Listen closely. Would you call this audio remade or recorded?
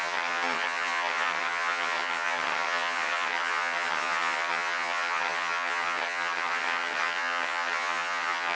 remade